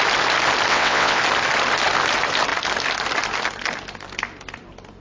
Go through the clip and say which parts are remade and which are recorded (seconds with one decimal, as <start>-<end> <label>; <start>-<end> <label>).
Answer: 0.0-0.7 recorded; 0.7-1.2 remade; 1.2-5.0 recorded